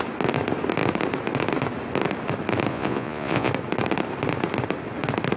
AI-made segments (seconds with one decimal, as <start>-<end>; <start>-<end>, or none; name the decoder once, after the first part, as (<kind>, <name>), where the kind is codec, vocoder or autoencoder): 2.7-3.5 (vocoder, Vocos)